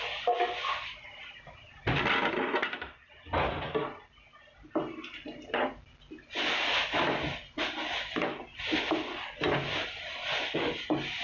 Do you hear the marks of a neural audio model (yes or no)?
no